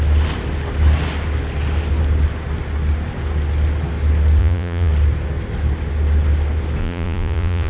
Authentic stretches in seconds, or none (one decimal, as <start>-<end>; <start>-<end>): 0.0-4.4; 4.9-6.8